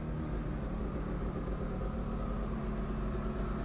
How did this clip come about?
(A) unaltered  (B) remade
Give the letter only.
A